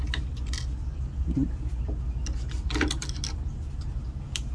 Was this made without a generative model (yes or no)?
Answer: yes